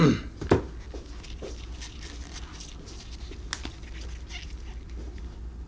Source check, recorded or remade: recorded